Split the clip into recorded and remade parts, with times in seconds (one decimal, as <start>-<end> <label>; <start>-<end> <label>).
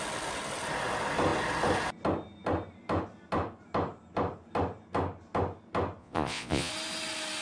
0.0-6.0 recorded; 6.0-6.7 remade; 6.7-7.4 recorded